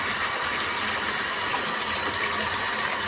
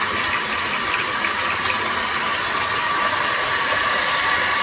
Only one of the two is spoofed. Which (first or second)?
second